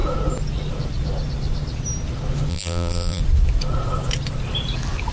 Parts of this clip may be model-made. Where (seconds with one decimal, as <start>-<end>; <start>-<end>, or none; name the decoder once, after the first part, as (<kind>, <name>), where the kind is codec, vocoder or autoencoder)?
2.5-3.2 (vocoder, BigVGAN v2)